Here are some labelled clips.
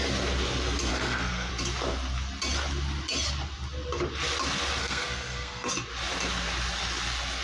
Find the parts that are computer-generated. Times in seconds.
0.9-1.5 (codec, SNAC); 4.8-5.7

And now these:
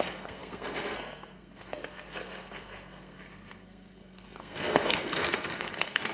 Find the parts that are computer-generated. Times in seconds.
0.0-6.1 (codec, SNAC)

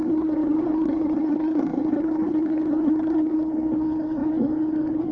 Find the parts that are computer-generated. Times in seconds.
0.0-5.1 (codec, SNAC)

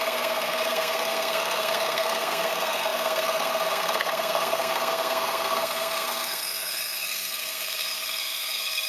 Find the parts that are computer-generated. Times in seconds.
0.0-8.9 (codec, SNAC)